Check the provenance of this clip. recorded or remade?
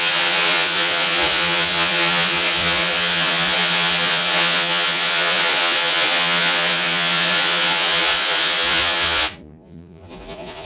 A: remade